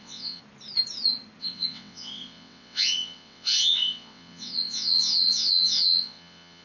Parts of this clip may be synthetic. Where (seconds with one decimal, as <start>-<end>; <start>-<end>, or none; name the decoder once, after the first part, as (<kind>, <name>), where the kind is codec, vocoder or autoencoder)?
0.0-0.4 (vocoder, WaveNeXt); 1.4-6.6